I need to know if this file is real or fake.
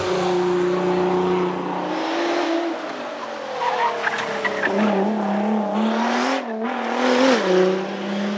real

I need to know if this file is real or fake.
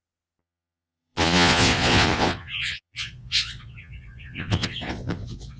fake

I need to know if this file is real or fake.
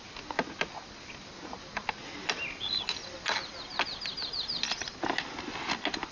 real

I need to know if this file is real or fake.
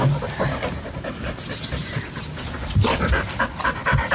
real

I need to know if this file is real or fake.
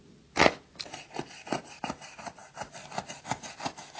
real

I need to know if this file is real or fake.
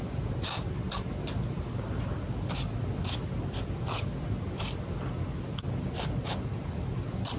real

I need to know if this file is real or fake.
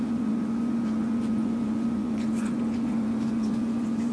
fake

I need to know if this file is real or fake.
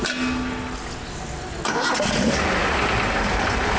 real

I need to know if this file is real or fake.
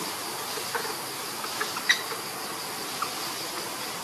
real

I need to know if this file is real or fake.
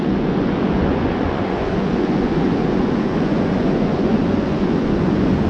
fake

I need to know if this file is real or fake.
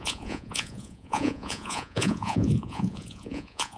fake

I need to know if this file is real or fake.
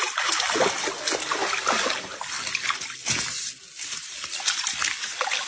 real